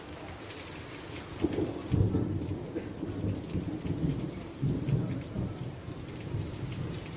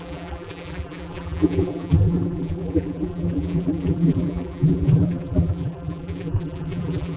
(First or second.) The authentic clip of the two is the first